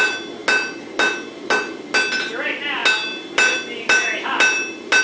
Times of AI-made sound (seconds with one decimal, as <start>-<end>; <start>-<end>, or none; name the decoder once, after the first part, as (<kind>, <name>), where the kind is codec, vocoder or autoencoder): none